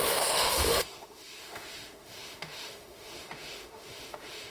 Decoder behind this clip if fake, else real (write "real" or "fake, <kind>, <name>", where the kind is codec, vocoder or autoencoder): fake, autoencoder, DAC-VAE